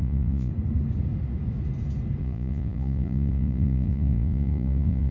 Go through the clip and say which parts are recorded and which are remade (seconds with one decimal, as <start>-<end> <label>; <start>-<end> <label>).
0.0-0.5 remade; 0.5-2.2 recorded; 2.2-5.1 remade